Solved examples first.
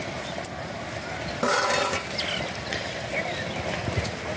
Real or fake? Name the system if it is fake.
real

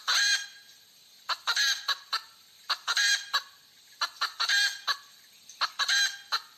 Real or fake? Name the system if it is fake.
fake, vocoder, BigVGAN v2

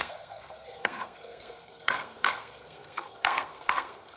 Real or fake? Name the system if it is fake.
fake, codec, SNAC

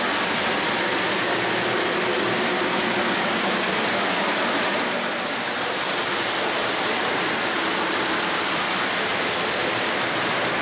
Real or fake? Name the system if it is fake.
real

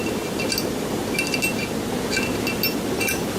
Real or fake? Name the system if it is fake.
real